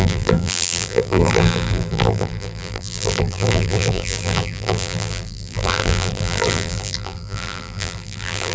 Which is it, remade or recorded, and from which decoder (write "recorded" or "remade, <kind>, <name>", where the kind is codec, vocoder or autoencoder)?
remade, vocoder, BigVGAN v2